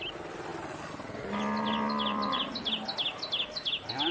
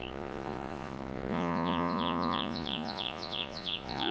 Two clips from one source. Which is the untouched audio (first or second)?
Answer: first